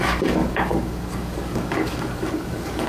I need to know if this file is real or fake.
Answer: fake